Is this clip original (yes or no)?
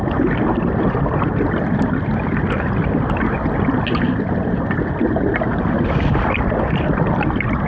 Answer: yes